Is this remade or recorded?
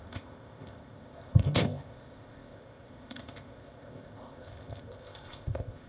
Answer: remade